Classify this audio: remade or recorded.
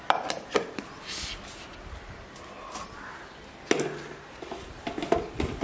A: recorded